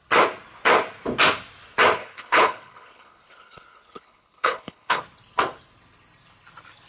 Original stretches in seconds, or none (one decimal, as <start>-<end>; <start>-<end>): 0.0-2.0; 5.0-6.9